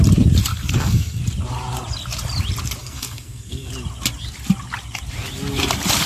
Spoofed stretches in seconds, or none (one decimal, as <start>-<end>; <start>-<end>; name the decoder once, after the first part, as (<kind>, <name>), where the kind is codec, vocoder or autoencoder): 0.5-1.2 (codec, SNAC); 2.8-3.7